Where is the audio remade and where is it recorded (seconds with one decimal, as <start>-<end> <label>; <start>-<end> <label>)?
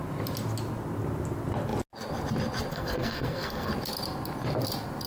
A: 0.0-2.7 recorded; 2.7-3.7 remade; 3.7-5.1 recorded